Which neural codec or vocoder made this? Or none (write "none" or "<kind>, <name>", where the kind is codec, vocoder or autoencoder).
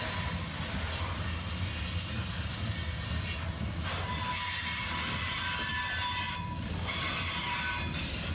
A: none